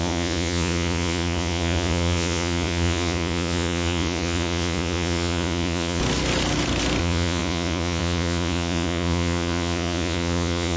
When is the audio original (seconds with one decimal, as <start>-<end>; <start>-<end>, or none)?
6.0-7.0